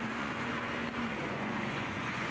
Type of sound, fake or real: fake